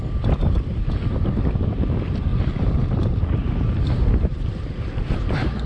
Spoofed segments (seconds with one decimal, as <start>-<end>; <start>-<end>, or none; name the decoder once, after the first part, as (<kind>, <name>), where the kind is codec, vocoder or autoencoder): 4.3-5.7 (vocoder, BigVGAN v2)